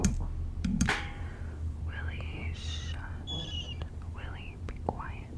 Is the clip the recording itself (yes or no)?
no